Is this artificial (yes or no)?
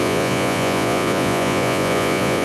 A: yes